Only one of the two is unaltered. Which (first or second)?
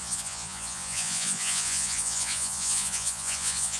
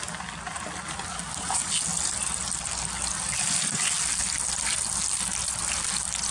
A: second